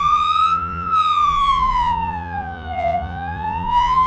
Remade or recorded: remade